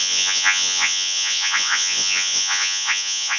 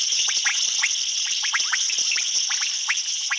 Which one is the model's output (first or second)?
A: first